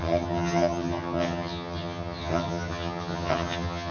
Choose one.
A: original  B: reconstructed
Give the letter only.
B